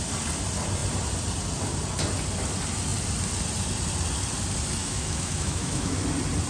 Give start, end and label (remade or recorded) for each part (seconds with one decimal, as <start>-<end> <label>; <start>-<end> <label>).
0.0-4.8 recorded; 4.8-6.0 remade; 6.0-6.5 recorded